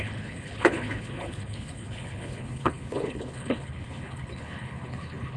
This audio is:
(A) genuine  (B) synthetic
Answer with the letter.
B